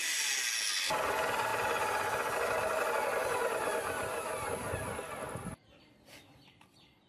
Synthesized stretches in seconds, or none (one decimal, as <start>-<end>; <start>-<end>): none